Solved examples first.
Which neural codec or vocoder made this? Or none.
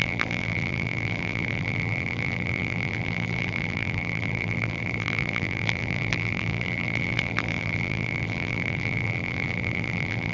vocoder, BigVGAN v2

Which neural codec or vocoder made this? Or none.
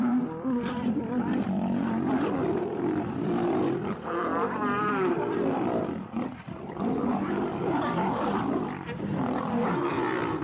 vocoder, BigVGAN v2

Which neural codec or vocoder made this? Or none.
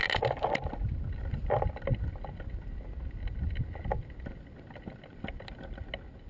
none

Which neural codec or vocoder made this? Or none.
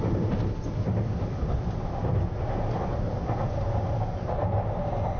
none